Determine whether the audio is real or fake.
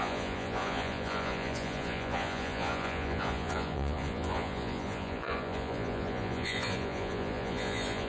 fake